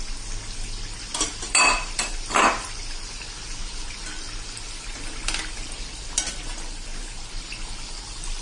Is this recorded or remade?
recorded